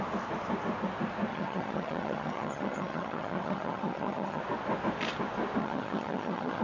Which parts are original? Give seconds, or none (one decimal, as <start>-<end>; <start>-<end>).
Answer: 0.0-1.3; 4.4-5.6